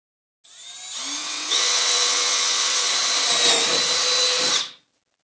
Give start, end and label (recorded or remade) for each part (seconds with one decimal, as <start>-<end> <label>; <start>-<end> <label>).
0.0-1.2 recorded; 1.2-2.9 remade; 2.9-5.3 recorded